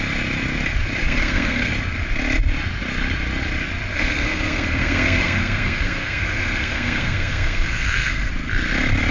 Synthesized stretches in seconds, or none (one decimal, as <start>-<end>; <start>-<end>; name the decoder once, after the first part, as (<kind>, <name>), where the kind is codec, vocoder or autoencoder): 1.0-1.7 (codec, SNAC); 3.9-8.3